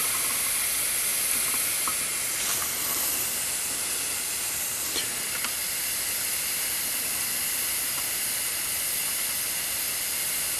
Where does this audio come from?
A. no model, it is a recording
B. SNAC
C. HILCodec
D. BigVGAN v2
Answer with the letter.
A